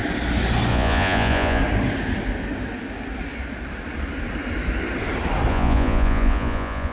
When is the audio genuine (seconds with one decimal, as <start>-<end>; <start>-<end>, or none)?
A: 0.0-0.7; 1.6-5.5